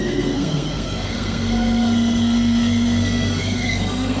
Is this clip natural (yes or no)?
no